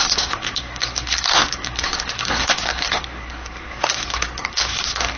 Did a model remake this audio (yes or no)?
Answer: yes